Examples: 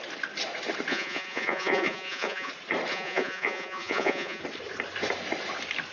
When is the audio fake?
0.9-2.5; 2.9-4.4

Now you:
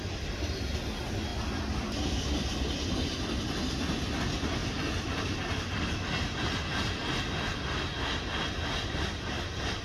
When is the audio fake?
none

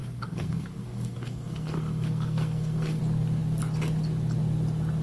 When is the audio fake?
0.0-3.0

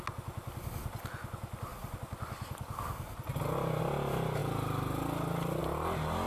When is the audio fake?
none

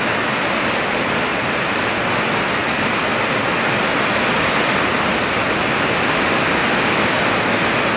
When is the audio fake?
1.3-1.8; 6.6-7.2

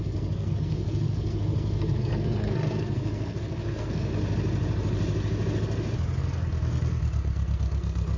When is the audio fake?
0.0-4.1; 6.2-8.2

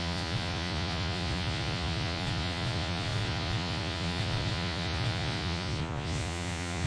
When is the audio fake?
0.0-6.9

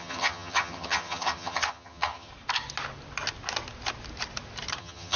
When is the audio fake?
0.0-2.3; 4.8-5.2